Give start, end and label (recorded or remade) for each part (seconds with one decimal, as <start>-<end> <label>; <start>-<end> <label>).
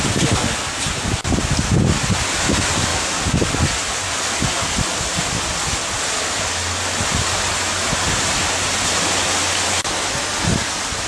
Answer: 0.0-11.1 recorded